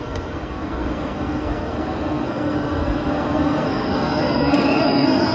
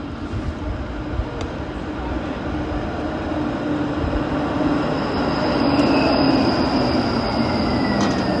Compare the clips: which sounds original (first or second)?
second